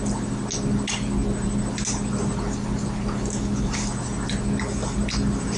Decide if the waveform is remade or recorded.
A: recorded